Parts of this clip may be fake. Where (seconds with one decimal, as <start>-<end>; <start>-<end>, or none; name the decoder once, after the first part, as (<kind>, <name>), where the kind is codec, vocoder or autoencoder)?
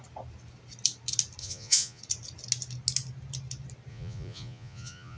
1.4-2.0 (vocoder, Vocos); 3.9-5.2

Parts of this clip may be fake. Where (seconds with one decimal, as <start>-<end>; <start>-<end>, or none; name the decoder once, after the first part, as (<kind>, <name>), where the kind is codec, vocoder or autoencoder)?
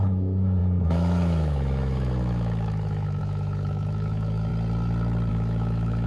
0.0-4.5 (autoencoder, DAC-VAE); 5.3-6.1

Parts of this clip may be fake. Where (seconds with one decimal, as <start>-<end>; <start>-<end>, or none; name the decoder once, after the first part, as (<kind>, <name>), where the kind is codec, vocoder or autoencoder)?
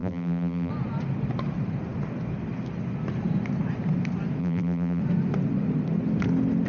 0.0-0.7 (vocoder, BigVGAN v2); 4.4-5.0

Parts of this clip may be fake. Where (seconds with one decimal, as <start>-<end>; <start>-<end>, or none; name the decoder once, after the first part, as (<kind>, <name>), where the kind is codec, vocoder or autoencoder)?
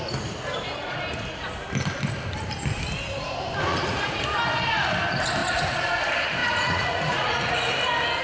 3.7-4.2 (vocoder, Vocos); 5.4-6.0; 6.4-7.7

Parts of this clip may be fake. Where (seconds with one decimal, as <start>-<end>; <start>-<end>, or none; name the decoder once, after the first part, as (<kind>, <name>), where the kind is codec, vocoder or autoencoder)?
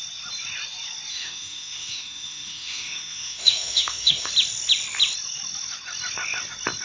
1.1-4.3 (autoencoder, DAC-VAE)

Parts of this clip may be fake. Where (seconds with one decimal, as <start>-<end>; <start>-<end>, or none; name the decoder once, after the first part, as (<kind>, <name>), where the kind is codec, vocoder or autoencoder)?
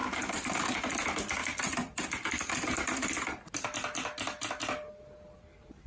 1.4-4.9 (vocoder, BigVGAN v2)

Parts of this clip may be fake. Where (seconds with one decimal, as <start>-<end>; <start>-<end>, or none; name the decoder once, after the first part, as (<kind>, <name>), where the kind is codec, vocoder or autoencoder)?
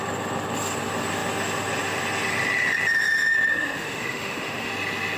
3.5-4.7 (autoencoder, DAC-VAE)